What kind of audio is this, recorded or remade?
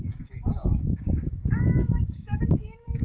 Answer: remade